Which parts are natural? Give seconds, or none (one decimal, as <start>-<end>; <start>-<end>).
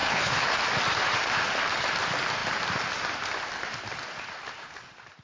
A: 0.6-5.2